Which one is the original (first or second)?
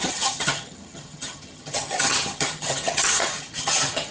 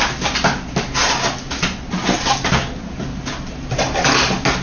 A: second